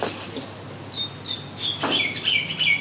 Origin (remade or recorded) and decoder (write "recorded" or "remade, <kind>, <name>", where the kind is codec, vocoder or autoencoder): recorded